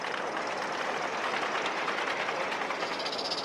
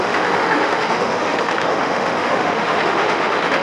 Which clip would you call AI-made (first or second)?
second